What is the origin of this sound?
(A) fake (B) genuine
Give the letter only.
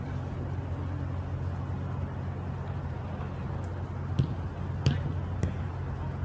B